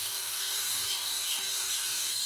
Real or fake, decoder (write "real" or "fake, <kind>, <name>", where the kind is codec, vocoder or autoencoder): fake, codec, DAC